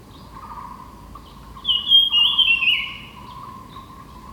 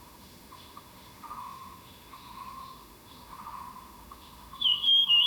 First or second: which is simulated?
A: second